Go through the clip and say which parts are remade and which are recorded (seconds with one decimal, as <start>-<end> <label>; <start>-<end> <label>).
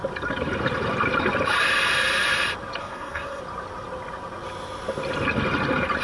0.0-2.8 recorded; 2.8-3.4 remade; 3.4-6.0 recorded